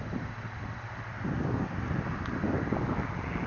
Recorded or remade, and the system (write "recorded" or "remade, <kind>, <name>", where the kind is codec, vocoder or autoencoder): recorded